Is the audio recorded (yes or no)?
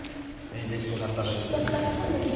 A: yes